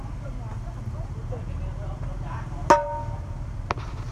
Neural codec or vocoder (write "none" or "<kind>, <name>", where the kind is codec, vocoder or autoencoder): none